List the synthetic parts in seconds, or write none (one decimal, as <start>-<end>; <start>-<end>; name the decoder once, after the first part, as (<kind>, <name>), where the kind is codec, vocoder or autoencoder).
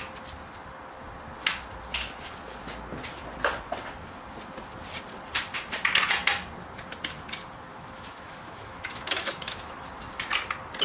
7.7-9.8 (autoencoder, DAC-VAE)